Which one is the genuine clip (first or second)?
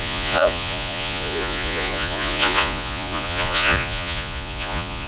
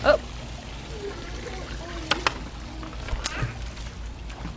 second